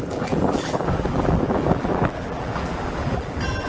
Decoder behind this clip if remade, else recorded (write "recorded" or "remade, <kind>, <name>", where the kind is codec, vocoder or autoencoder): remade, vocoder, BigVGAN v2